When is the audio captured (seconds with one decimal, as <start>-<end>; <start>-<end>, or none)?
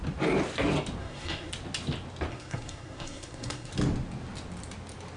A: 0.0-1.0; 1.5-2.3; 3.7-5.2